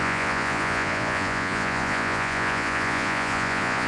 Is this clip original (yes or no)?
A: no